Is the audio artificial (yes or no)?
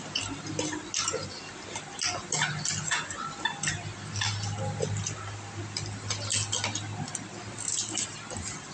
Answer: no